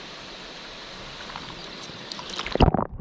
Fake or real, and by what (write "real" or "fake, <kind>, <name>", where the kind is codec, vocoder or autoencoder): real